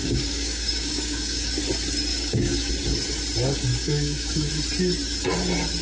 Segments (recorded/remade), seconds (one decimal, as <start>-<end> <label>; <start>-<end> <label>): 0.0-1.5 remade; 1.5-2.1 recorded; 2.1-2.7 remade; 2.7-3.7 recorded; 3.7-4.5 remade; 4.5-5.8 recorded